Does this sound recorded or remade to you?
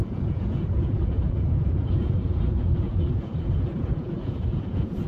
remade